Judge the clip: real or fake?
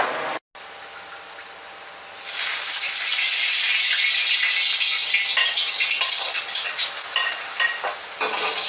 real